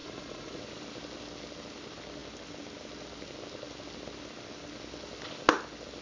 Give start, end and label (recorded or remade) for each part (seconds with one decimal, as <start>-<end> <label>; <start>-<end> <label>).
0.0-0.6 remade; 0.6-6.0 recorded

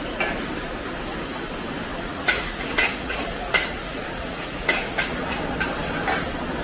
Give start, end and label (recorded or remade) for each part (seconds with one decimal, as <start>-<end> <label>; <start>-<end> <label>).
0.0-1.9 recorded; 1.9-5.4 remade; 5.4-6.6 recorded

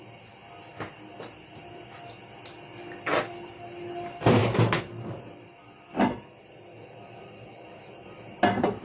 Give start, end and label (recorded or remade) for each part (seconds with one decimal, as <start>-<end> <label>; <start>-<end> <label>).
0.0-8.8 recorded

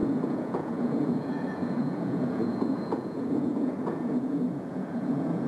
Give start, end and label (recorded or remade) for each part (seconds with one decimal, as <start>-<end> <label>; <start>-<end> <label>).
0.0-5.5 remade

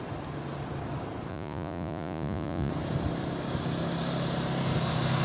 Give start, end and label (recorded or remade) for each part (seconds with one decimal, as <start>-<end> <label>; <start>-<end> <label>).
0.0-1.3 recorded; 1.3-2.7 remade; 2.7-5.2 recorded